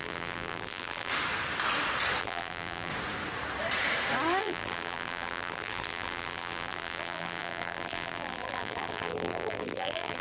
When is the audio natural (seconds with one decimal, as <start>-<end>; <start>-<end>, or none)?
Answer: 1.1-2.2; 2.9-4.4